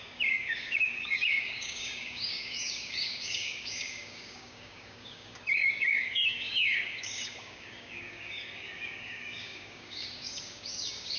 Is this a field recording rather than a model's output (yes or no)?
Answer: no